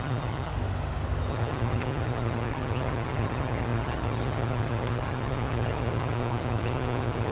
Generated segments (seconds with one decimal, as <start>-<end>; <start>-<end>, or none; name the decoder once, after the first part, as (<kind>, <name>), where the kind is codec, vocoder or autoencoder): 0.0-0.5 (vocoder, HiFi-GAN); 1.3-7.3

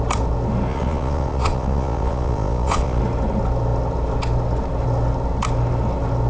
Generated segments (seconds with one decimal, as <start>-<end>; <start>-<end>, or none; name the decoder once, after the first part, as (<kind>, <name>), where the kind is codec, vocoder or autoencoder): 0.7-3.0 (vocoder, Vocos)